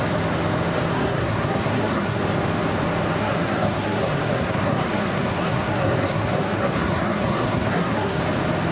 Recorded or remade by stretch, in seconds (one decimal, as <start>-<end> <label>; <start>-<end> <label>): 0.0-0.9 recorded; 0.9-2.2 remade; 2.2-3.2 recorded; 3.2-8.2 remade; 8.2-8.7 recorded